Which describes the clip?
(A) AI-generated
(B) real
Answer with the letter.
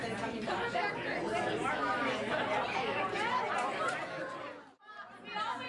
B